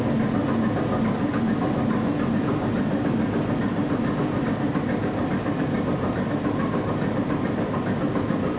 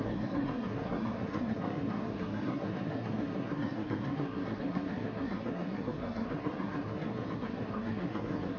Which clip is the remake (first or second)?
second